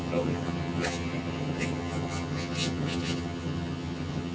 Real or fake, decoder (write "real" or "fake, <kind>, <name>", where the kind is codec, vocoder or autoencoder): fake, vocoder, HiFi-GAN